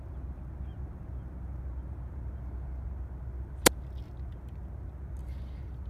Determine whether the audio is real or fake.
real